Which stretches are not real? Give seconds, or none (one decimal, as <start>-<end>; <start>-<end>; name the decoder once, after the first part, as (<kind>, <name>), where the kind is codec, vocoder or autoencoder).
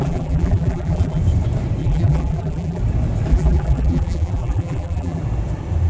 0.0-1.2 (vocoder, BigVGAN v2); 1.8-2.8; 3.3-5.2